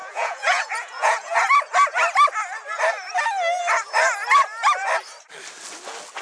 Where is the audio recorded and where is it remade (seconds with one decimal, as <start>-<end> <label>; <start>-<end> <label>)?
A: 0.0-1.4 remade; 1.4-6.2 recorded